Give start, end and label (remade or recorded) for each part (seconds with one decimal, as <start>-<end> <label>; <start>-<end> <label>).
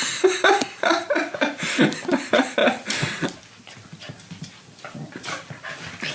0.0-6.1 remade